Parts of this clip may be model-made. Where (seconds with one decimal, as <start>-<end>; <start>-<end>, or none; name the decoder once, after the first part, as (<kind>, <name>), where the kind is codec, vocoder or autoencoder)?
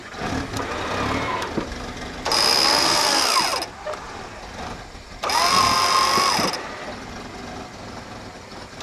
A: none